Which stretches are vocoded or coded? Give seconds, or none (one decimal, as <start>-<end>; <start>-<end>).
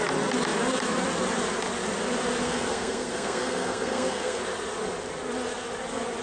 2.4-4.4